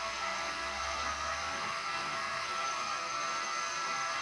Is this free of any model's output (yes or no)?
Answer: no